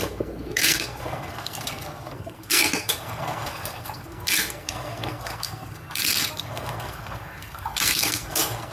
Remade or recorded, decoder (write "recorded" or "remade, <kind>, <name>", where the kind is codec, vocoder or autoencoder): remade, codec, SNAC